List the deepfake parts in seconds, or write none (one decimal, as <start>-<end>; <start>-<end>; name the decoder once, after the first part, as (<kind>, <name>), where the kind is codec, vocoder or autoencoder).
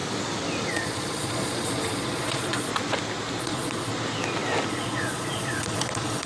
0.7-2.7 (vocoder, Vocos); 3.4-3.9; 4.7-6.3